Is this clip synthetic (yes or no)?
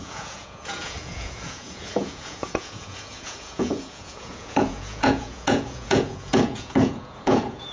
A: yes